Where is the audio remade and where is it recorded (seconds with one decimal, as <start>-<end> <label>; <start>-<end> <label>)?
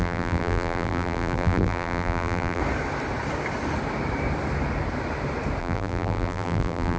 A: 0.0-2.6 remade; 2.6-5.6 recorded; 5.6-7.0 remade